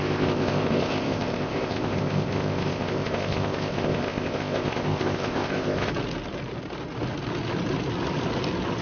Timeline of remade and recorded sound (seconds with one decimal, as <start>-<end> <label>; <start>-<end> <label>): 0.0-5.9 remade; 5.9-8.8 recorded